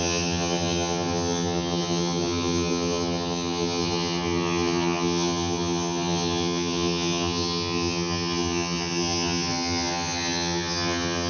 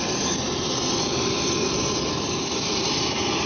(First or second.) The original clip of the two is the second